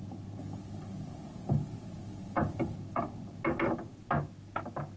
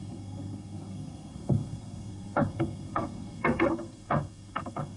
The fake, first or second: second